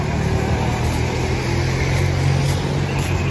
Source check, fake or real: real